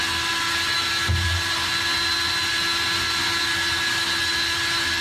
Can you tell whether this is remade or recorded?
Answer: recorded